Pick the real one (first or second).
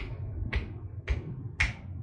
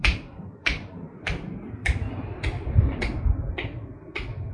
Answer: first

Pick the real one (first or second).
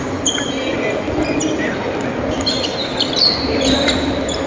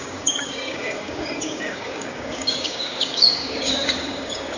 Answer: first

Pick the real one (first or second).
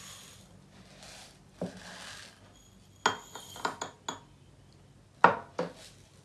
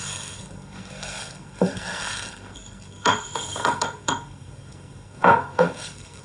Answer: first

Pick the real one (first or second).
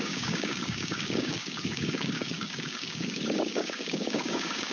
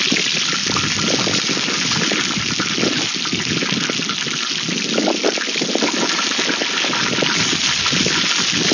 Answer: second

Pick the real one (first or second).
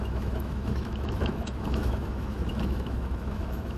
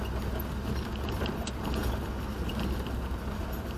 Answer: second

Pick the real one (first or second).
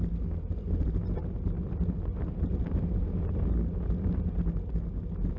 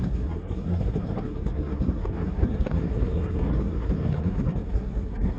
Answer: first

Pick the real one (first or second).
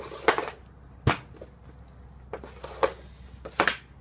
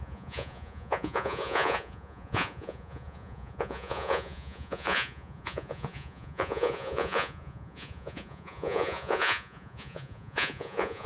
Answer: first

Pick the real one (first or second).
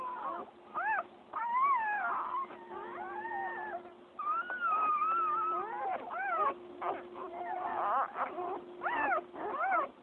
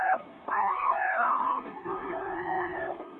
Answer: first